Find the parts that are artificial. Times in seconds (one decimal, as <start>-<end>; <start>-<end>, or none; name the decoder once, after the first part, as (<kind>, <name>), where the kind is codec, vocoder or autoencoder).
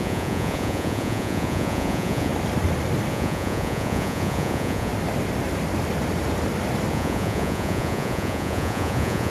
0.0-2.3 (vocoder, Vocos); 3.1-4.9; 6.9-9.3